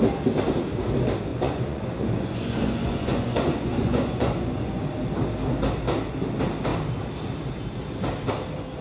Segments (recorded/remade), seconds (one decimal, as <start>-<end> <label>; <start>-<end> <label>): 0.0-1.3 recorded; 1.3-4.8 remade; 4.8-8.8 recorded

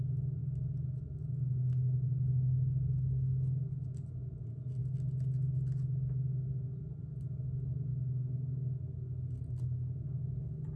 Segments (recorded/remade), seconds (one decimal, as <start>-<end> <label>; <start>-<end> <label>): 0.0-10.8 recorded

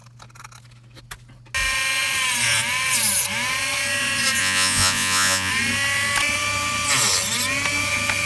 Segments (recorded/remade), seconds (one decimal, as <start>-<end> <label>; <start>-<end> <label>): 0.0-4.4 recorded; 4.4-5.5 remade; 5.5-8.3 recorded

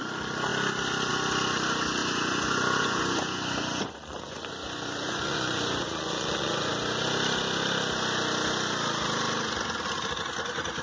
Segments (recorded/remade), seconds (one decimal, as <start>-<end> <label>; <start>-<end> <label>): 0.0-2.0 recorded; 2.0-6.7 remade; 6.7-10.8 recorded